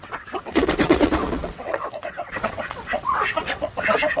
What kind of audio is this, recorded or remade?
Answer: remade